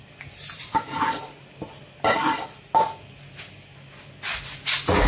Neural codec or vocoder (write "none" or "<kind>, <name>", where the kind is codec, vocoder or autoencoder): none